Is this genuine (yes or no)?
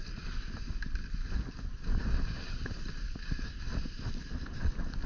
yes